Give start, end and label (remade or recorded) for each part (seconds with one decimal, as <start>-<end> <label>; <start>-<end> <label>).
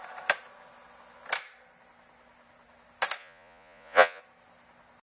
0.0-3.2 recorded; 3.2-4.2 remade; 4.2-5.1 recorded